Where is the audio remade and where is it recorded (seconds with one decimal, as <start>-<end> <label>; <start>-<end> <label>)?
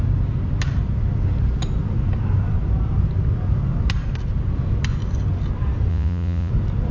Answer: 0.0-5.9 recorded; 5.9-6.5 remade; 6.5-6.9 recorded